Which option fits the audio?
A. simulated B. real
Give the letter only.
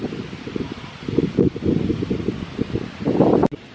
B